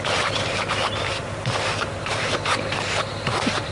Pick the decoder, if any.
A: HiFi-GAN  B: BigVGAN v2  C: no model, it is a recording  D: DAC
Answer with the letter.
B